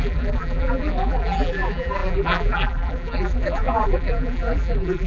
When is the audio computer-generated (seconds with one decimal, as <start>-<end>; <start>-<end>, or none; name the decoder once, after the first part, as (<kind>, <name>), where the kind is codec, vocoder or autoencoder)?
0.0-5.1 (vocoder, BigVGAN v2)